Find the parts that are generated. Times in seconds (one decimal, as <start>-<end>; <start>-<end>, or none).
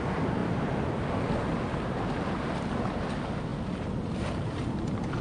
none